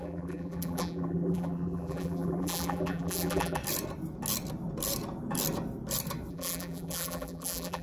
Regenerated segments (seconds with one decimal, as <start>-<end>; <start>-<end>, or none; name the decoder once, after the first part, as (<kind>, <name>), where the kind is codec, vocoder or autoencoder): 0.0-3.6 (vocoder, BigVGAN v2); 6.3-7.8